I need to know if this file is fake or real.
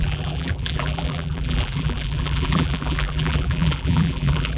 fake